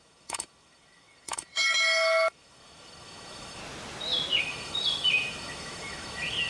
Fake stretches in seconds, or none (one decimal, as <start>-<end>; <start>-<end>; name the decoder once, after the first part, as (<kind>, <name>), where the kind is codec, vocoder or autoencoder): 0.0-3.6 (autoencoder, DAC-VAE); 4.4-6.5